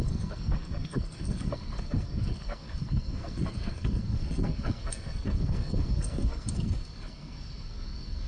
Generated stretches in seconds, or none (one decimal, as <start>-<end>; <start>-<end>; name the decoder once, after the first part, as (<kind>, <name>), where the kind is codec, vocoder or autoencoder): 0.0-8.3 (codec, SNAC)